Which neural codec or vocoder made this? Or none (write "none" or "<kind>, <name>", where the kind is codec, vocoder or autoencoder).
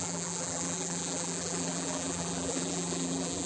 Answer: vocoder, BigVGAN v2